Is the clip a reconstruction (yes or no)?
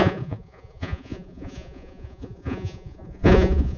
yes